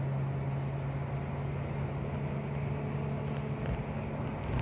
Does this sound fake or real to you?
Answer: real